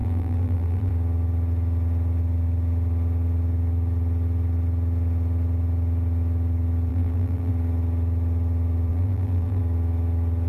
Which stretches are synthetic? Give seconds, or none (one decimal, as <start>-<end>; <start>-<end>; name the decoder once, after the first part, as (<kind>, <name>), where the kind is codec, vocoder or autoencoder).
0.0-0.9 (vocoder, BigVGAN v2); 6.9-7.5; 8.9-9.6